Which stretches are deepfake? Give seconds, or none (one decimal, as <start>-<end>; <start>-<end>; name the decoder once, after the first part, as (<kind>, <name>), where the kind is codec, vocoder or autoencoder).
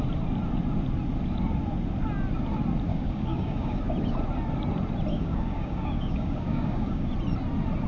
2.9-3.8 (codec, DAC); 5.1-7.1